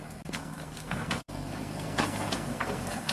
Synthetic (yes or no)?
yes